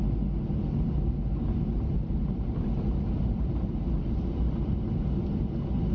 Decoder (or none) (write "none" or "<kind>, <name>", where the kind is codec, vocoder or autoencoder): none